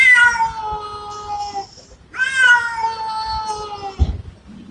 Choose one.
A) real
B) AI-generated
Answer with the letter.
A